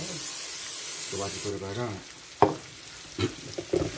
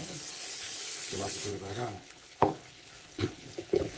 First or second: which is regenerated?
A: second